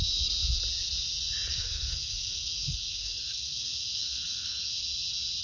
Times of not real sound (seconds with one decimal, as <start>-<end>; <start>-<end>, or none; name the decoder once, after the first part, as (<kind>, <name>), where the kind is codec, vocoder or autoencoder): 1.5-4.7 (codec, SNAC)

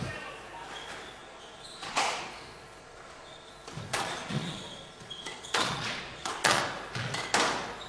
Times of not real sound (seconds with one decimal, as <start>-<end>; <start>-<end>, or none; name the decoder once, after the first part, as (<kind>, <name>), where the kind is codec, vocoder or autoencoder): 1.2-2.3 (vocoder, Vocos); 2.8-3.5; 3.9-6.6

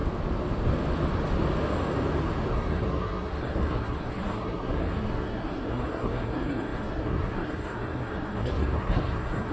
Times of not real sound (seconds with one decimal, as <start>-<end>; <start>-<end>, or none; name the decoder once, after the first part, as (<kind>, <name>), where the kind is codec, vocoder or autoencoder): 2.5-9.5 (codec, SNAC)

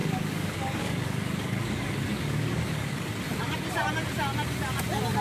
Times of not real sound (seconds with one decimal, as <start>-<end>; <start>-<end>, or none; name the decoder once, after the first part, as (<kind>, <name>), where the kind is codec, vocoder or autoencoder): 0.0-3.1 (codec, DAC)